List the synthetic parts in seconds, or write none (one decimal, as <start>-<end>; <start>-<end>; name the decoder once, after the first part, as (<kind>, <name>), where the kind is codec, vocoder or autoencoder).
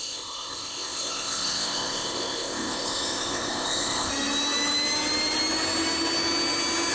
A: 0.0-4.1 (codec, ZipCodec)